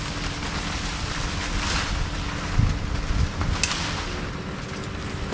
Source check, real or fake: real